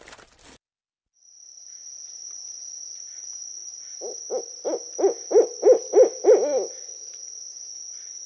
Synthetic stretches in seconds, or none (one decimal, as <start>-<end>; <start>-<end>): none